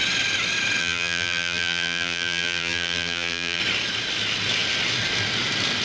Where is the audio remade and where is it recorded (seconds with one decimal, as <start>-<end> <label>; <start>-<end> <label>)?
0.0-0.8 recorded; 0.8-3.6 remade; 3.6-5.8 recorded